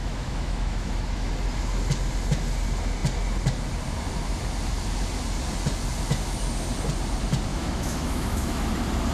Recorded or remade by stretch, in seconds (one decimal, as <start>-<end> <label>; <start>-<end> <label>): 0.0-1.3 remade; 1.3-7.5 recorded; 7.5-8.7 remade; 8.7-9.1 recorded